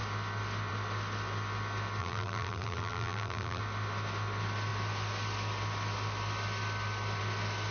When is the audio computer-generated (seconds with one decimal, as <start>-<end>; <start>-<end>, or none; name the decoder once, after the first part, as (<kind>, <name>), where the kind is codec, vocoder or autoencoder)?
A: 2.0-3.6 (vocoder, BigVGAN v2)